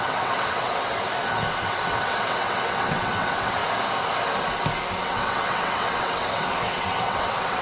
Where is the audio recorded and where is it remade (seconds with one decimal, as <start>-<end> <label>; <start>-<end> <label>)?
0.0-0.9 remade; 0.9-1.5 recorded; 1.5-3.6 remade; 3.6-5.0 recorded; 5.0-7.6 remade